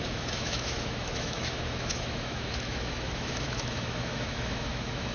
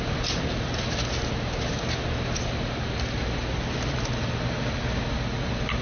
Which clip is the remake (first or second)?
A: first